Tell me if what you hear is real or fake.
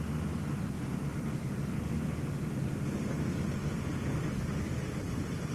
real